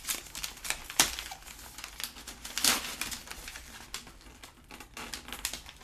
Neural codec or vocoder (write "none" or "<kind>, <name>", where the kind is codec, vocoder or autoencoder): none